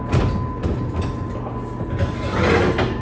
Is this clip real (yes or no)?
yes